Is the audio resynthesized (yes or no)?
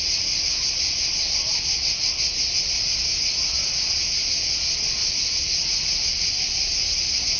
no